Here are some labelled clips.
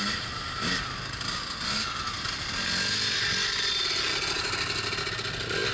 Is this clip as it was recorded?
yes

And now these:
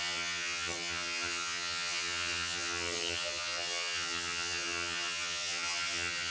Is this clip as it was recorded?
no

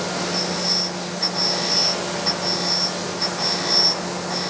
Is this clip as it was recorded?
yes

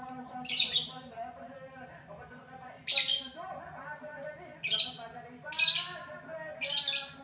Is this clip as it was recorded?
yes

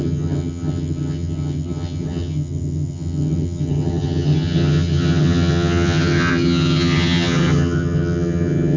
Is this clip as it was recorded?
no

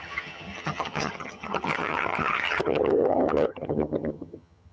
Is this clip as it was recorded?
no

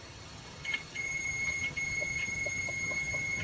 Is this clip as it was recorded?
no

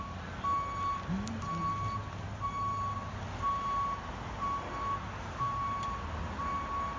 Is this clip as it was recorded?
yes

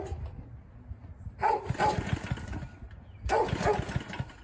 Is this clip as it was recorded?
yes